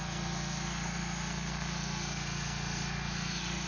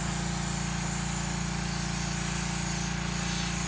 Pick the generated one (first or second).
first